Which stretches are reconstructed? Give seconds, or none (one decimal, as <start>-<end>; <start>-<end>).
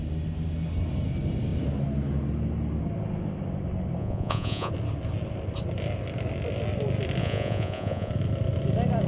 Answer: 4.0-4.7; 7.2-8.1